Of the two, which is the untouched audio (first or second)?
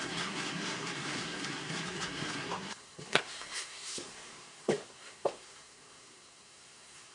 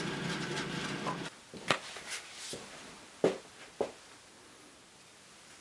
second